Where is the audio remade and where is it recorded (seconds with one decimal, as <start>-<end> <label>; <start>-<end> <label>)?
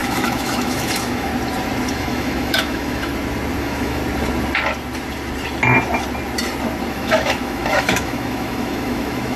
0.0-1.3 remade; 1.3-1.9 recorded; 1.9-3.1 remade; 3.1-3.6 recorded; 3.6-4.0 remade; 4.0-6.9 recorded; 6.9-9.4 remade